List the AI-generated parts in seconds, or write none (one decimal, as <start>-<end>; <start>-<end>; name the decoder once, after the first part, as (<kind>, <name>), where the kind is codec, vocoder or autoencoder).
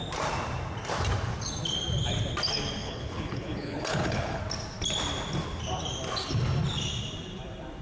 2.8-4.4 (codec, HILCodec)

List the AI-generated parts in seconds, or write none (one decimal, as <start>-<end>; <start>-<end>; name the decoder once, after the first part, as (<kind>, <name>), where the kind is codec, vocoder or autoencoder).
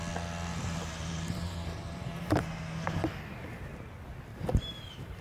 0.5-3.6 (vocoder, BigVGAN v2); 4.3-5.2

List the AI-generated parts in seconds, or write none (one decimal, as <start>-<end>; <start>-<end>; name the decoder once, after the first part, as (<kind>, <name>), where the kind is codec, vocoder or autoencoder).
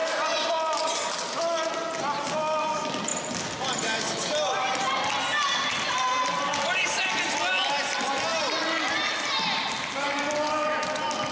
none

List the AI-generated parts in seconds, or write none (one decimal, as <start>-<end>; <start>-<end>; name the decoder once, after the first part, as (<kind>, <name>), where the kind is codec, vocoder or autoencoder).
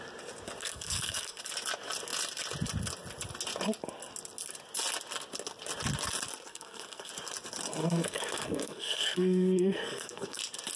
0.6-1.4 (codec, SNAC); 6.5-7.1; 7.8-10.4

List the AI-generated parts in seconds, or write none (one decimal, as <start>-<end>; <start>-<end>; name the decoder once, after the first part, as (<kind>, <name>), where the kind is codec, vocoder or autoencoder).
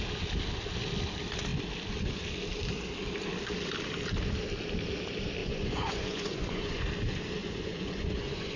5.4-6.9 (vocoder, Vocos); 7.4-8.6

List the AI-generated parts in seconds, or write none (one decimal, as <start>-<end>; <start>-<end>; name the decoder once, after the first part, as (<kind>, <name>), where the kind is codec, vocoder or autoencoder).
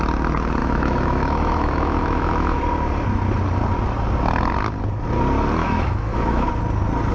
0.6-2.6 (autoencoder, DAC-VAE); 5.6-6.5